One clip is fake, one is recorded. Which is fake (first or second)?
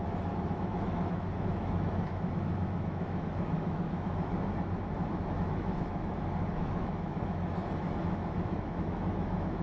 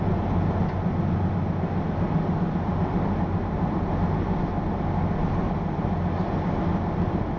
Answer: first